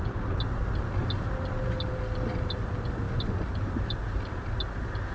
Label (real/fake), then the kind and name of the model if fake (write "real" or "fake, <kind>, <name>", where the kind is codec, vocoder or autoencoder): real